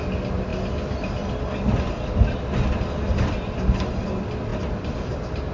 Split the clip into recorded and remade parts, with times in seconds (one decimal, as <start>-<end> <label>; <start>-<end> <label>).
0.0-5.5 recorded